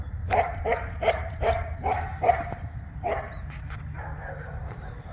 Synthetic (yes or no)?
yes